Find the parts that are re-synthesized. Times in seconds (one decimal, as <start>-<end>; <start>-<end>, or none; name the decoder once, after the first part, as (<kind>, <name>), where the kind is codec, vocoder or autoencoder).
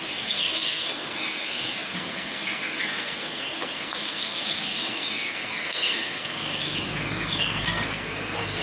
0.0-8.6 (codec, SNAC)